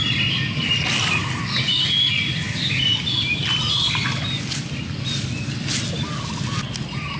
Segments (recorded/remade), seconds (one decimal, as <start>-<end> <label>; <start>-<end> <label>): 0.0-7.2 recorded